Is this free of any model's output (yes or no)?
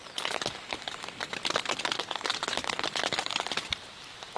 yes